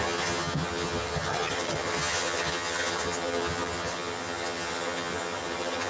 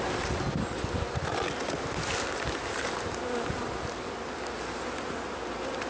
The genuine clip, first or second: second